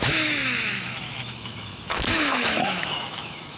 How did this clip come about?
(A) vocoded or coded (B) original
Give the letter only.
A